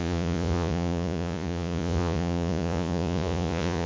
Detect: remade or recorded remade